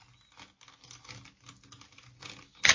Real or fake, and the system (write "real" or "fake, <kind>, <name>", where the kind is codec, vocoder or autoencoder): real